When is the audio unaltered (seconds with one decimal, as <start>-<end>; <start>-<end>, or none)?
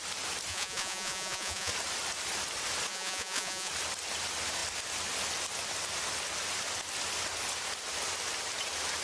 0.0-0.5; 1.7-2.9; 3.7-9.0